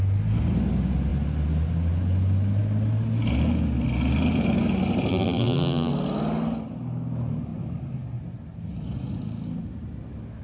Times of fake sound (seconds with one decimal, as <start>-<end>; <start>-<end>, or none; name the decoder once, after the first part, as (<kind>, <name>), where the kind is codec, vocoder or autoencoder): 5.1-5.9 (vocoder, BigVGAN v2)